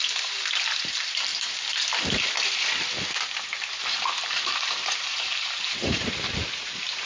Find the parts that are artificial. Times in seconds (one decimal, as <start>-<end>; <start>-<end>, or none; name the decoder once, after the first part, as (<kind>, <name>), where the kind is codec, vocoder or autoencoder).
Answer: 0.0-1.3 (vocoder, BigVGAN v2); 3.2-7.1